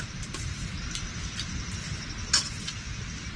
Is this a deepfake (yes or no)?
no